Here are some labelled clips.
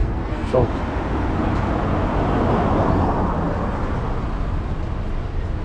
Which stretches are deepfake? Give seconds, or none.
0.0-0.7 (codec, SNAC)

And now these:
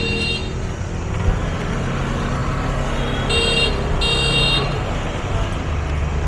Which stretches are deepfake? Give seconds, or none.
none

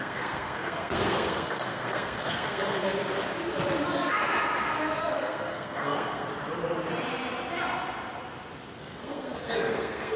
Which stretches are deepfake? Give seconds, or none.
0.0-3.0 (codec, SNAC); 5.0-6.3; 8.8-10.2

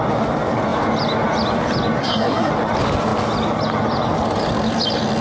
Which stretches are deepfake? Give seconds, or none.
2.0-2.5 (codec, SNAC)

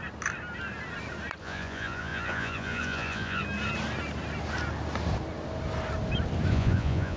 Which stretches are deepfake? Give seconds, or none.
1.4-3.4 (vocoder, Vocos); 6.5-7.2

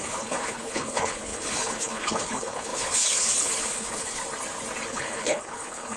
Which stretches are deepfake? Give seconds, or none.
0.0-4.2 (codec, HILCodec); 4.9-6.0

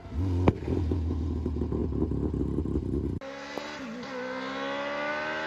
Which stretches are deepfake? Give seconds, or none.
none